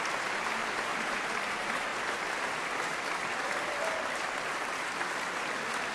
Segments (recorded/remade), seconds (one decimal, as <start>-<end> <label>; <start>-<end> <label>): 0.0-0.9 recorded; 0.9-1.4 remade; 1.4-5.9 recorded